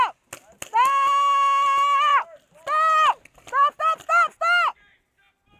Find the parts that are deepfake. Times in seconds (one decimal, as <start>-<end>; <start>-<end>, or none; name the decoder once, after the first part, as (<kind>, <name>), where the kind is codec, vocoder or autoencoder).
none